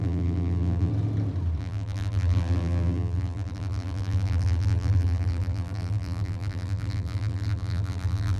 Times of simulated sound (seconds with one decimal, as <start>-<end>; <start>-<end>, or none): 0.0-0.9; 1.6-8.4